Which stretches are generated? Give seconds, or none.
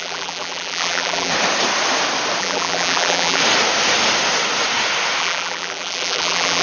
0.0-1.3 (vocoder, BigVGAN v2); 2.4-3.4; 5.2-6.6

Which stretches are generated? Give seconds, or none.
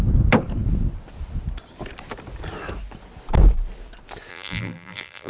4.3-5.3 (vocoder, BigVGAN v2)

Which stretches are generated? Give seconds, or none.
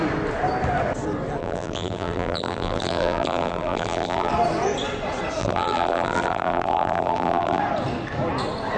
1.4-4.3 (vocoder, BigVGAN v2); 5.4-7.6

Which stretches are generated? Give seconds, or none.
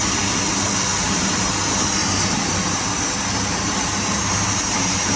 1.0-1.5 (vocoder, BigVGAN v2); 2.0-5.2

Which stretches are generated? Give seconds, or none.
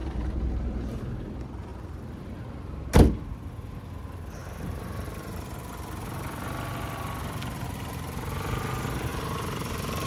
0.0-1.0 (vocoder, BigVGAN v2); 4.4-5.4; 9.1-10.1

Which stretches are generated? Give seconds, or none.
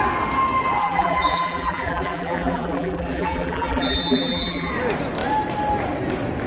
0.8-4.7 (vocoder, BigVGAN v2)